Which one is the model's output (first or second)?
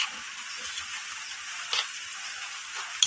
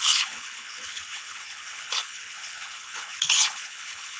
second